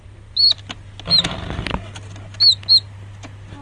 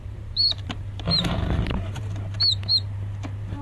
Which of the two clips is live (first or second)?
first